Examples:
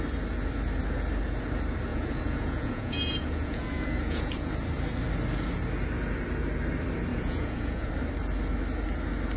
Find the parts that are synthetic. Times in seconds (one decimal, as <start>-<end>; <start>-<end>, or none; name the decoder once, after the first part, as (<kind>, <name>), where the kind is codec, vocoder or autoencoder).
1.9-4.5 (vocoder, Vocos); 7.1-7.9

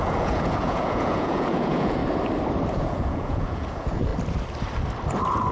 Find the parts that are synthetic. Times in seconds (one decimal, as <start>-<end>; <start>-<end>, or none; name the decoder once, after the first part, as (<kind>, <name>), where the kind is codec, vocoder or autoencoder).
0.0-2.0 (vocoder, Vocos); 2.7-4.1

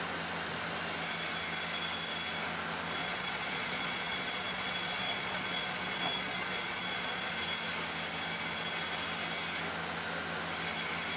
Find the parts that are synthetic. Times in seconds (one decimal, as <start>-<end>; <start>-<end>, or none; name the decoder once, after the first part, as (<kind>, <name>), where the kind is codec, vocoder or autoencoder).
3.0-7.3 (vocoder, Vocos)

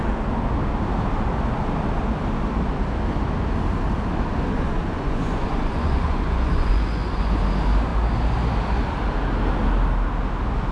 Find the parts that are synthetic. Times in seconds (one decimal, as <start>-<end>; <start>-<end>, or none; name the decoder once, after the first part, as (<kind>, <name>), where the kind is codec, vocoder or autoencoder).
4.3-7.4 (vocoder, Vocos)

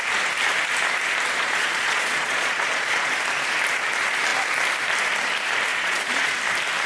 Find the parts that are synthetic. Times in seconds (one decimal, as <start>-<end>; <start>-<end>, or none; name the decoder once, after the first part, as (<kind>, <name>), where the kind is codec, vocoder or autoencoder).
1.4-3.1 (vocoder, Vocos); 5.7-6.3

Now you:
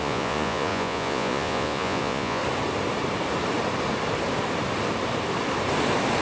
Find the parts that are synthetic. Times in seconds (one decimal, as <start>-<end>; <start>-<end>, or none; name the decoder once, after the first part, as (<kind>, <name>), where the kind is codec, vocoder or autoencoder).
0.0-2.4 (vocoder, Vocos)

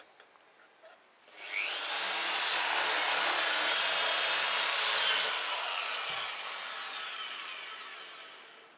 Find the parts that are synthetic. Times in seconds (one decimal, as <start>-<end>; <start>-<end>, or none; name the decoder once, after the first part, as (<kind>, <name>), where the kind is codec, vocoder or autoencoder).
none